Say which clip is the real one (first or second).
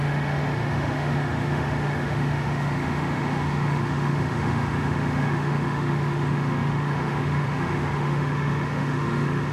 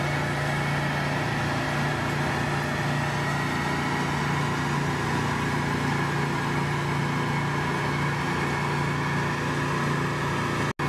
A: second